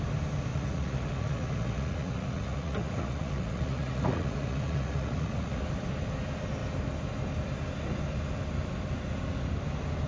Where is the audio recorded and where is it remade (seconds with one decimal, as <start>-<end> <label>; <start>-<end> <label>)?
0.0-0.5 recorded; 0.5-5.6 remade; 5.6-10.1 recorded